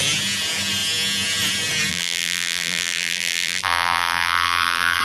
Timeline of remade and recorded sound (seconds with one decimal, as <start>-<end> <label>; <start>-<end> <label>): 0.0-1.9 recorded; 1.9-5.0 remade

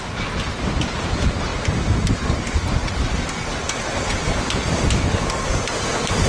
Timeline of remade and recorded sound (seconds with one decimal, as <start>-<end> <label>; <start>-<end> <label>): 0.0-6.3 recorded

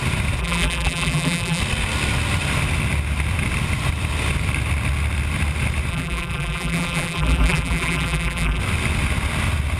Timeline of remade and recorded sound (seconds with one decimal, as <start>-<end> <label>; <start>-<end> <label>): 0.0-0.4 recorded; 0.4-1.6 remade; 1.6-5.9 recorded; 5.9-8.6 remade; 8.6-9.8 recorded

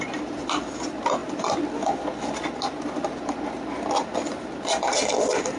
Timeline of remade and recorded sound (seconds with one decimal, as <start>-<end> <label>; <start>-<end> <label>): 0.0-5.6 recorded

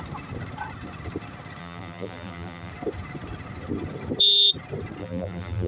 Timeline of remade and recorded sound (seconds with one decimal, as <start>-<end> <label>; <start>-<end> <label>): 0.0-1.6 recorded; 1.6-2.7 remade; 2.7-5.0 recorded; 5.0-5.7 remade